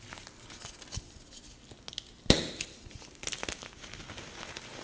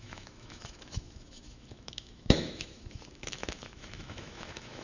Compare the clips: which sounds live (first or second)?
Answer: first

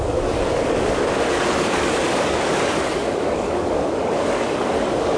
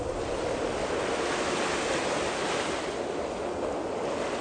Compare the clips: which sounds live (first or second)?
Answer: second